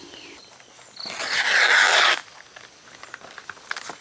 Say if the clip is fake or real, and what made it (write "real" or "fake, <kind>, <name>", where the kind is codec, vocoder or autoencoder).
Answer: real